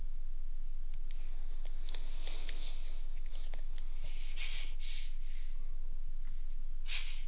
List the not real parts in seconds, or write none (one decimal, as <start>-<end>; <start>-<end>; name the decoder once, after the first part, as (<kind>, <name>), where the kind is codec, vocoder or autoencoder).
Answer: none